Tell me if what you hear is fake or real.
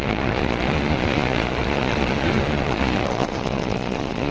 fake